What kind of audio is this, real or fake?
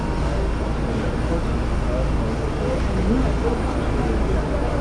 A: real